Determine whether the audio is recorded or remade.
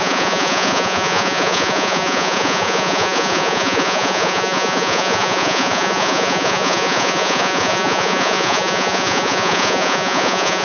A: remade